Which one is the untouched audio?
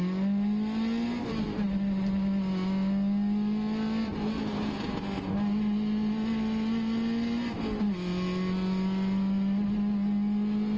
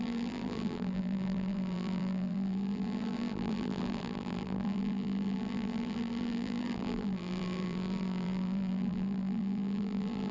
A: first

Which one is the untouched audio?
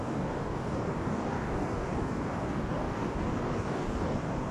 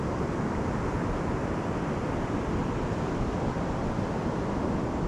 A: second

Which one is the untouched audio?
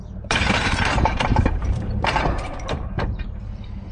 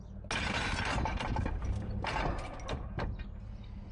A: second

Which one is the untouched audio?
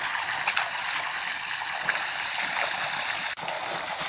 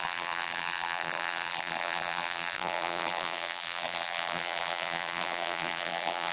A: first